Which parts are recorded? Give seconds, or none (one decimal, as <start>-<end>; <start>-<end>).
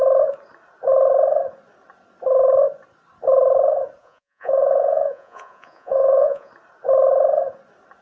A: 0.0-4.0; 6.5-8.0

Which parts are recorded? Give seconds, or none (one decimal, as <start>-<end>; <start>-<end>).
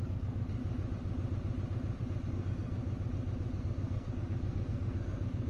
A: 0.6-2.3; 2.8-3.6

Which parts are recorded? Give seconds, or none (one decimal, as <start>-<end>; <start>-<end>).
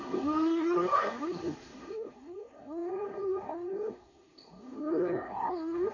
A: none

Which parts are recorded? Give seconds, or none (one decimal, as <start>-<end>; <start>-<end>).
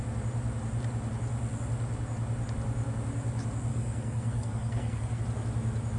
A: 0.0-3.7; 5.2-6.0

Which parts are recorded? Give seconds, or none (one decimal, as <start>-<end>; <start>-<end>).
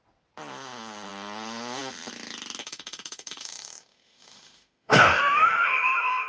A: 0.0-2.6